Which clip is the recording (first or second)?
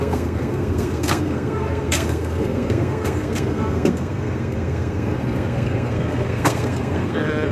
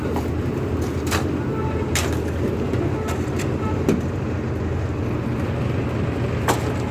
second